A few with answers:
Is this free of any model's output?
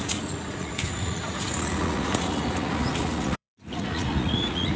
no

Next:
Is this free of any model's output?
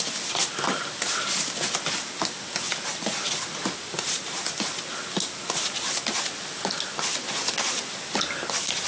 yes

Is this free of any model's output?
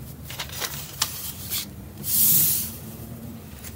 no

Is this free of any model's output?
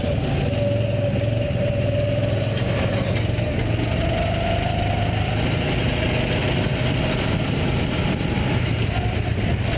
yes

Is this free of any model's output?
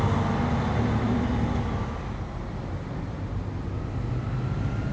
yes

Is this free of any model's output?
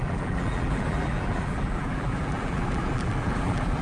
no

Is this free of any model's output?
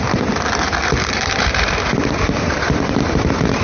no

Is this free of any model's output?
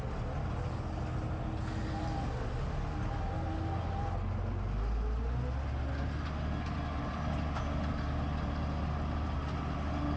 yes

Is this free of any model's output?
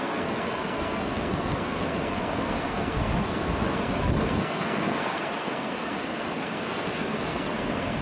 no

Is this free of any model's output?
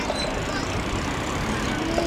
yes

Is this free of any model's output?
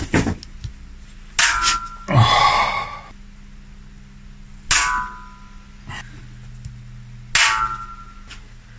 yes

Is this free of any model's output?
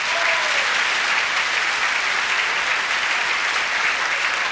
yes